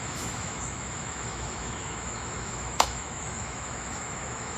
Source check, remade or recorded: remade